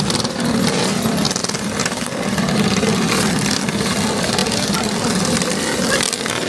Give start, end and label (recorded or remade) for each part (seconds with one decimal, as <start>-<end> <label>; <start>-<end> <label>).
0.0-4.4 recorded; 4.4-5.6 remade; 5.6-6.5 recorded